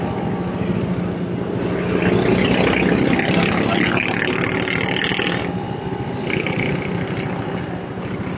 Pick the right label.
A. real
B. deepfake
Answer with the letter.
A